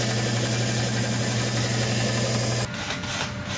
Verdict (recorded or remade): recorded